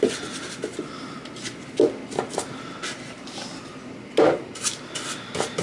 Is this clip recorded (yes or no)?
yes